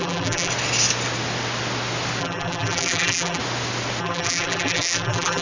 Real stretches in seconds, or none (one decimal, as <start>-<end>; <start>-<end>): 0.5-2.2; 3.4-4.0